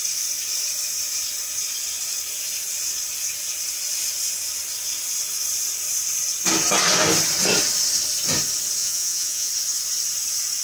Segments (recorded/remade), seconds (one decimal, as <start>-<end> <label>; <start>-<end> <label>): 0.0-8.8 recorded; 8.8-9.5 remade; 9.5-10.6 recorded